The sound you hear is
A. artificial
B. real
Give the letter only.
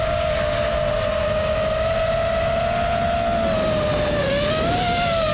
B